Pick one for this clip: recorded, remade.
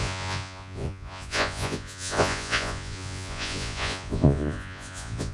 remade